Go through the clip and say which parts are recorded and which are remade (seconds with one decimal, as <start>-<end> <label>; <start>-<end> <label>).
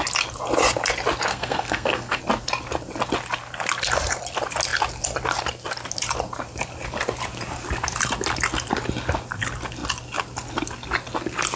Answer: 0.0-1.3 recorded; 1.3-2.2 remade; 2.2-11.6 recorded